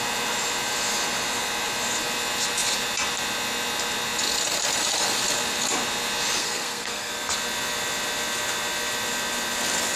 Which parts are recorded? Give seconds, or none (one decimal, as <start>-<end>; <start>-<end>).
0.0-6.4; 7.1-10.0